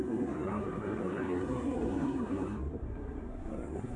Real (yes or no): no